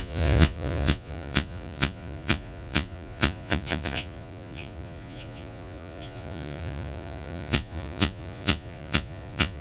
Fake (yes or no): yes